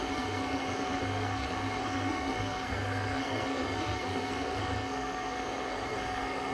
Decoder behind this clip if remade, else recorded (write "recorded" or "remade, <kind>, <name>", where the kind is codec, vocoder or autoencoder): remade, codec, SNAC